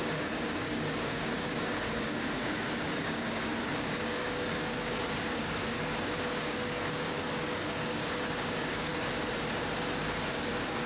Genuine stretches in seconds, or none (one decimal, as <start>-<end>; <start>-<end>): 8.9-9.5